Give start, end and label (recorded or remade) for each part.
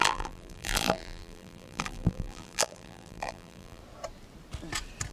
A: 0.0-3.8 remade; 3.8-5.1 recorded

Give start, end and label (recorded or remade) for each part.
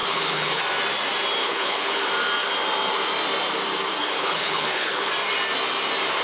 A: 0.0-0.6 remade; 0.6-1.4 recorded; 1.4-2.1 remade; 2.1-4.0 recorded; 4.0-5.1 remade; 5.1-6.2 recorded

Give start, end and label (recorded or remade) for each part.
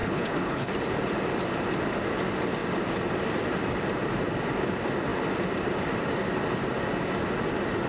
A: 0.0-0.7 remade; 0.7-7.9 recorded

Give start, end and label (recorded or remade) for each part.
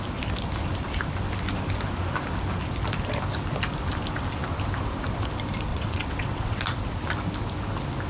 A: 0.0-5.7 recorded; 5.7-6.6 remade; 6.6-8.1 recorded